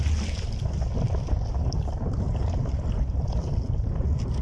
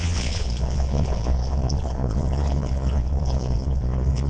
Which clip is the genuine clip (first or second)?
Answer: first